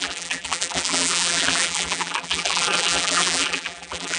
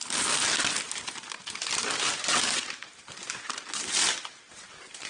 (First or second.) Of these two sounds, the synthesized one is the first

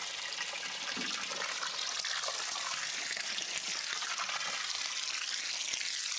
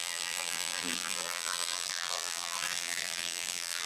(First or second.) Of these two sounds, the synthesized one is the second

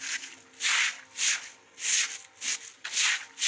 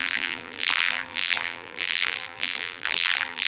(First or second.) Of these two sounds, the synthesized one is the second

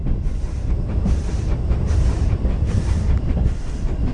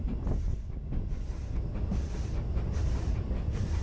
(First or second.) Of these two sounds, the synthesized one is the first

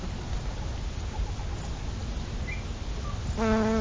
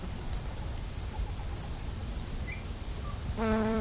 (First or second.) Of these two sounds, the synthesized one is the second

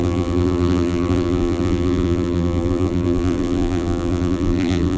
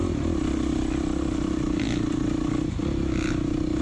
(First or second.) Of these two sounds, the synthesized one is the first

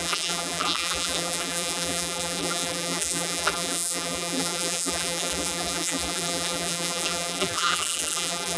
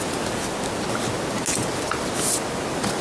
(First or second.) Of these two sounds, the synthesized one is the first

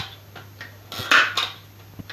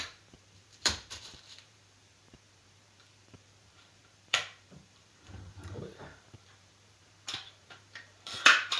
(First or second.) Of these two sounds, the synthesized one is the second